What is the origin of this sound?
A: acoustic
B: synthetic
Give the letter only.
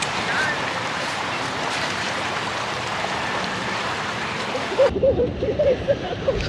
B